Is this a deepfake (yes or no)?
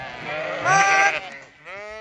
no